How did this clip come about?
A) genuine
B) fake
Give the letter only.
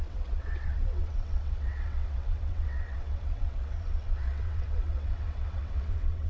B